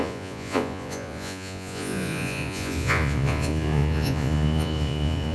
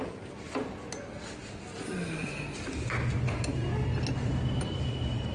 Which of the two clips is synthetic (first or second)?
first